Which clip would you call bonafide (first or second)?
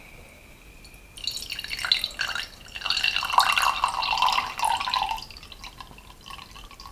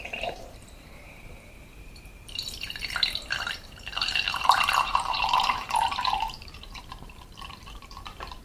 first